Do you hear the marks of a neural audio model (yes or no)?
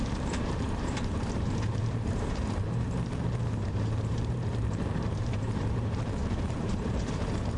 yes